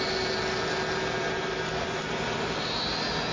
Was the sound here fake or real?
real